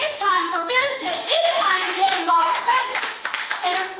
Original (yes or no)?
no